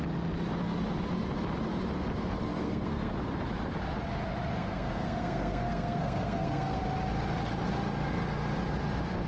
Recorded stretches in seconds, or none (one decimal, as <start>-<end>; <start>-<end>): 0.0-2.5; 3.1-4.6; 6.8-9.3